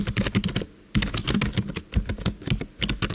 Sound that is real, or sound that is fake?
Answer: real